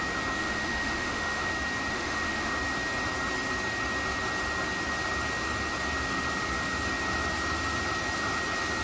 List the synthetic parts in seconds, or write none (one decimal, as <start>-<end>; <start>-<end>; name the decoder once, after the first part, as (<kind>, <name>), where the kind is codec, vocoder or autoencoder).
0.4-1.5 (autoencoder, DAC-VAE); 1.9-2.5